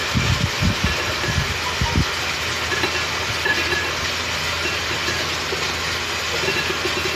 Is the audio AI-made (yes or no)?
no